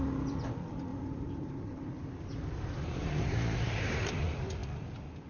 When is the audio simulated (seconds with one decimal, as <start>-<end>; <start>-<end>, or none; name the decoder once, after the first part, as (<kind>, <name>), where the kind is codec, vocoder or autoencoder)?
0.9-4.1 (vocoder, BigVGAN v2)